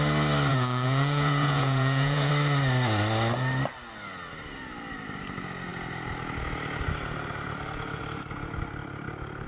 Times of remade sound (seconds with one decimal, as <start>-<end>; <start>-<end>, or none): 0.5-2.3